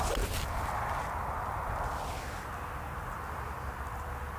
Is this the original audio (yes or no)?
yes